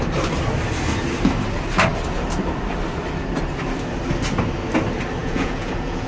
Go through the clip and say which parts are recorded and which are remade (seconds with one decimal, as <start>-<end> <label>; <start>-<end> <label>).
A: 0.0-5.2 recorded; 5.2-6.1 remade